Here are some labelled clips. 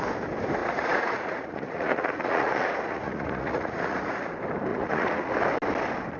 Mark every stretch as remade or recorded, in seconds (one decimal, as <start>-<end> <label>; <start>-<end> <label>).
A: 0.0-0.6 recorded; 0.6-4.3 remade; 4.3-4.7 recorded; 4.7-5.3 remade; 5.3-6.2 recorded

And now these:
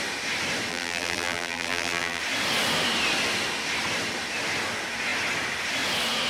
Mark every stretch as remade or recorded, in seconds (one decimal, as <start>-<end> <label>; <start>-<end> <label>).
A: 0.0-0.7 recorded; 0.7-2.2 remade; 2.2-6.3 recorded

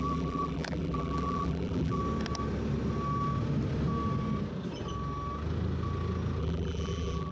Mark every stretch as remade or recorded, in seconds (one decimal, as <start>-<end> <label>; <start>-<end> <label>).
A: 0.0-2.0 remade; 2.0-6.4 recorded; 6.4-7.3 remade

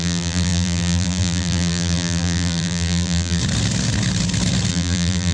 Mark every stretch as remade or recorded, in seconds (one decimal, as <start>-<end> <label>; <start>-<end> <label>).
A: 0.0-3.4 remade; 3.4-4.7 recorded; 4.7-5.3 remade